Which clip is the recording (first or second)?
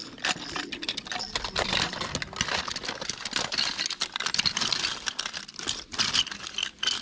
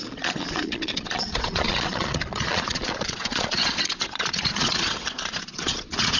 first